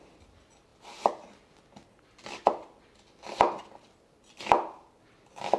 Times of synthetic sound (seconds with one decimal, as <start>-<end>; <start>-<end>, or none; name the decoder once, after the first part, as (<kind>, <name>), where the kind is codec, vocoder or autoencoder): none